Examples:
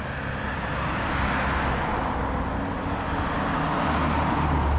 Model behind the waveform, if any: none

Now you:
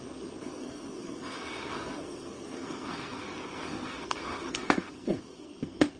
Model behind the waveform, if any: codec, SNAC